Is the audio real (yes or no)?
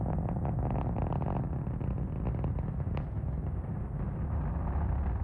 yes